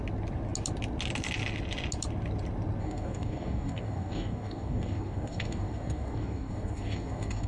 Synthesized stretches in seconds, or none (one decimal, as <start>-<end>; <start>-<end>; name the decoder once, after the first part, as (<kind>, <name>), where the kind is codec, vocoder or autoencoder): 2.8-7.5 (codec, DAC)